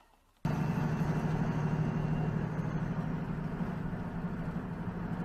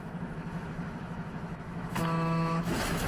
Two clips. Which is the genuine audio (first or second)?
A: first